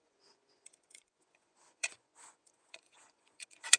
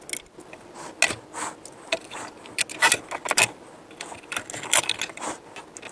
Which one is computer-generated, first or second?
first